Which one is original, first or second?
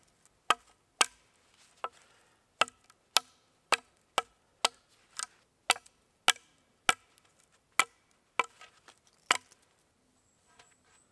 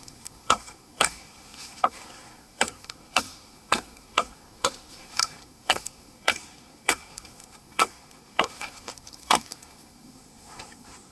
first